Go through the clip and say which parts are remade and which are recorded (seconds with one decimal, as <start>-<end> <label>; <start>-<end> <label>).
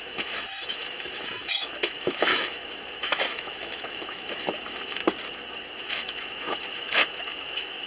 0.0-5.0 remade; 5.0-5.8 recorded; 5.8-7.9 remade